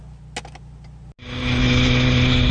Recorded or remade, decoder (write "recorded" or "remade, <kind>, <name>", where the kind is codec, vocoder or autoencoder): recorded